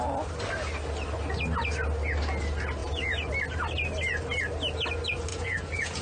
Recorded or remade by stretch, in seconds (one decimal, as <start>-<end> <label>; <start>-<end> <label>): 0.0-2.8 recorded; 2.8-3.3 remade; 3.3-5.3 recorded; 5.3-6.0 remade